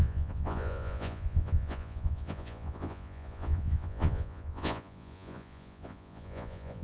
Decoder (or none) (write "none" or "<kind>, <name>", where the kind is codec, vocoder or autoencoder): vocoder, Vocos